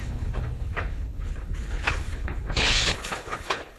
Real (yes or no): no